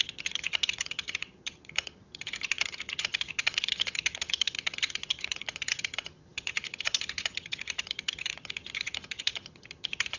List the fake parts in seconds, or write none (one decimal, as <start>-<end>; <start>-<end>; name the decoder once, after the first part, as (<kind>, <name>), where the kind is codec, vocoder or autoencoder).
0.0-10.2 (vocoder, HiFi-GAN)